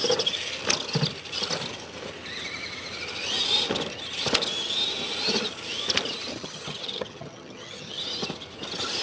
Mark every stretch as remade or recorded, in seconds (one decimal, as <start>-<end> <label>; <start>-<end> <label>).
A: 0.0-6.3 recorded; 6.3-8.0 remade; 8.0-9.0 recorded